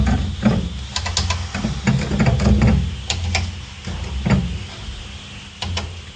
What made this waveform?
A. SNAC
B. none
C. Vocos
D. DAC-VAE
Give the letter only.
B